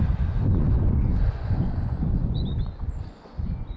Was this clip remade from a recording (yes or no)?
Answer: yes